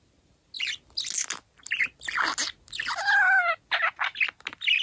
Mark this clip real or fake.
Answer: real